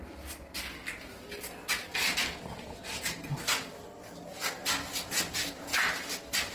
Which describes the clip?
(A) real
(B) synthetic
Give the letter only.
A